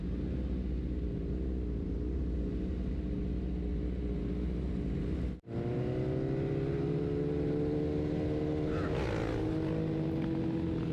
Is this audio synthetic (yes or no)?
no